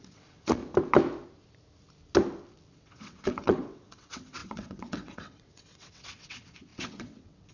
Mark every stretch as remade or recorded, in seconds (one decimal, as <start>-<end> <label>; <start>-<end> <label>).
0.0-0.6 remade; 0.6-2.7 recorded; 2.7-7.5 remade